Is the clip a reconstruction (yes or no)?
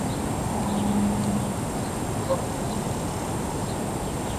no